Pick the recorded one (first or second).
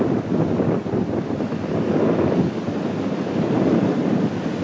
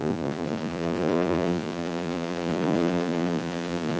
first